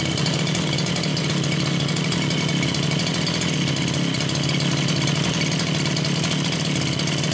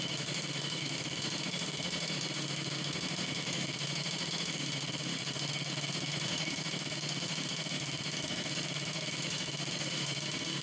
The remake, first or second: second